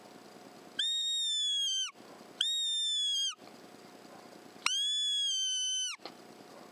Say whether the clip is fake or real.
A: real